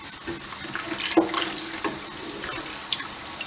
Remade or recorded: recorded